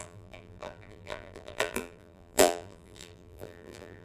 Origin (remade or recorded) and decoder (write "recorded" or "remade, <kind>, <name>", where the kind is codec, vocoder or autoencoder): remade, vocoder, BigVGAN v2